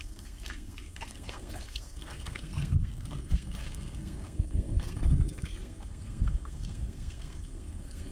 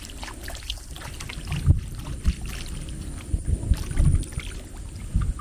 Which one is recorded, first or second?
second